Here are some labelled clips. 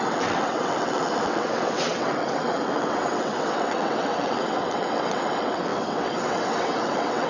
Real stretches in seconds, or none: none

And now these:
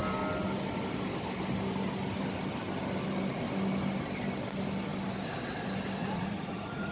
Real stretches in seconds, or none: 0.0-6.0